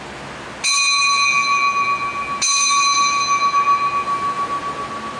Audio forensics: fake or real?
real